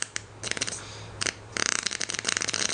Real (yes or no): no